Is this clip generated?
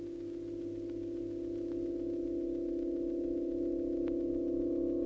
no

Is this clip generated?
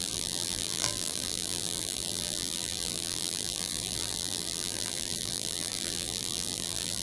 yes